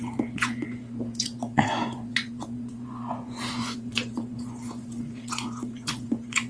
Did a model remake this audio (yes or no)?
yes